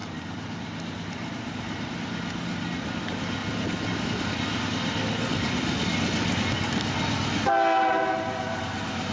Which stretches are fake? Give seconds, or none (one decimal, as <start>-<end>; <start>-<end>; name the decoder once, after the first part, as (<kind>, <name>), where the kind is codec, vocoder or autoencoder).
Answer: 0.0-1.9 (vocoder, BigVGAN v2); 3.4-4.6